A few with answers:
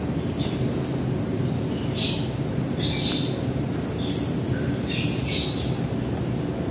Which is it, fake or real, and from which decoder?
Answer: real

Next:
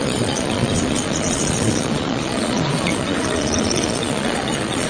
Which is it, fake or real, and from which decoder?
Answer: fake, vocoder, Vocos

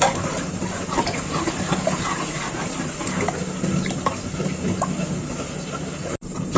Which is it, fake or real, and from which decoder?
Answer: real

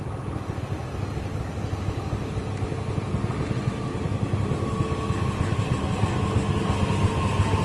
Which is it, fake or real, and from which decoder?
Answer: real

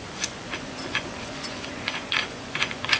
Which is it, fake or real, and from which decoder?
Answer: fake, vocoder, Vocos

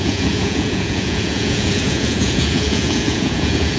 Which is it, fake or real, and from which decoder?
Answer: fake, vocoder, Vocos